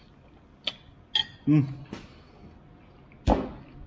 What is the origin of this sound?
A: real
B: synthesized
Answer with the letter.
A